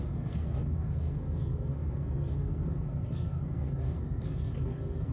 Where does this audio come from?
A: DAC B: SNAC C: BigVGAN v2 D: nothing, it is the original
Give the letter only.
B